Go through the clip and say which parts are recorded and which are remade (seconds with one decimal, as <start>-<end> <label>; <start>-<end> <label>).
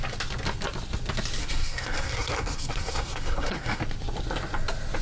0.0-1.4 recorded; 1.4-3.8 remade; 3.8-5.0 recorded